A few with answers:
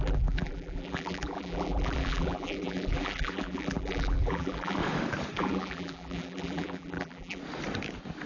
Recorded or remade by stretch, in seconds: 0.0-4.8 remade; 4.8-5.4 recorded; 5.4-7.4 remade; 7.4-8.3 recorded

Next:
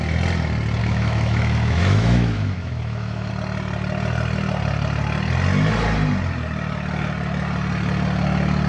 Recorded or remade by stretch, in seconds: 0.0-0.8 recorded; 0.8-3.3 remade; 3.3-8.7 recorded

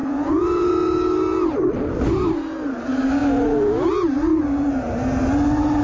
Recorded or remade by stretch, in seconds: 0.0-0.7 remade; 0.7-5.8 recorded

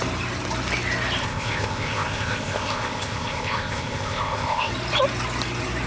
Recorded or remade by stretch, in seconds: 0.0-1.2 recorded; 1.2-4.7 remade; 4.7-5.9 recorded

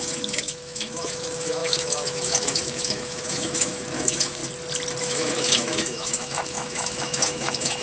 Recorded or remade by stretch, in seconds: 0.0-4.4 remade; 4.4-5.0 recorded; 5.0-7.8 remade